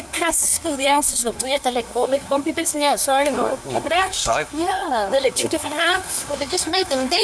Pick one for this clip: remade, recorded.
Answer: remade